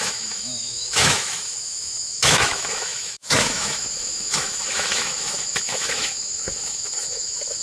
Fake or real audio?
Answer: fake